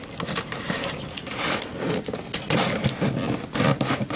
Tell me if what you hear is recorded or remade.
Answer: recorded